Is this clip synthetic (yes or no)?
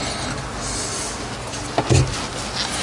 no